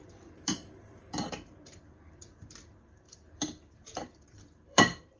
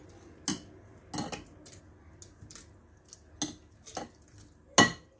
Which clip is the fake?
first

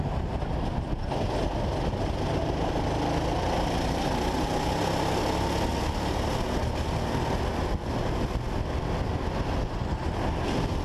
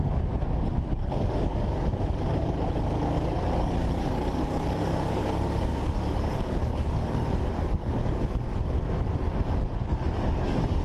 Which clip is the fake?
second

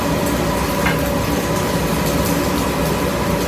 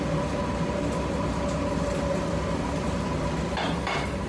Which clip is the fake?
second